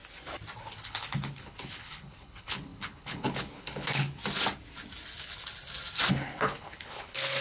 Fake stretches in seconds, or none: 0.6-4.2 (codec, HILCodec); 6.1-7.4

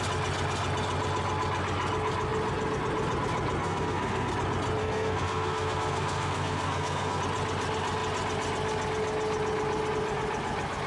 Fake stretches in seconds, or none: 3.6-4.3 (codec, SNAC); 4.8-7.2

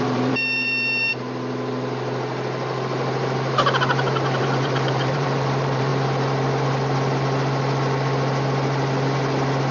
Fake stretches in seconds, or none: 0.0-1.1 (vocoder, BigVGAN v2); 4.4-5.9

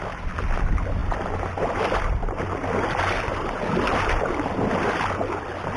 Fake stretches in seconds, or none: none

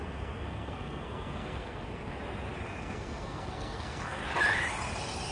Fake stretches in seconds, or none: 0.0-2.2 (codec, SNAC); 2.8-4.2

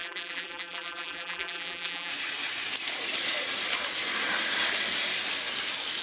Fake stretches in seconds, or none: 0.0-2.1 (vocoder, BigVGAN v2)

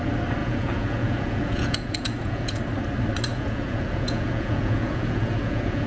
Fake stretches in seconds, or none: 0.4-2.6 (vocoder, Vocos); 3.3-5.9

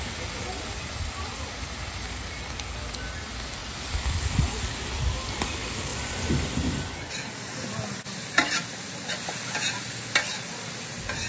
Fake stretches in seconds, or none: 5.9-7.1 (vocoder, Vocos)